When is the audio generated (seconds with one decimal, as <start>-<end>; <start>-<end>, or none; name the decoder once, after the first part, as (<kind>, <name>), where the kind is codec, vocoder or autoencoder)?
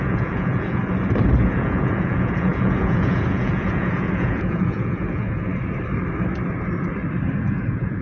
0.0-0.8 (vocoder, Vocos); 1.4-5.5; 7.4-8.0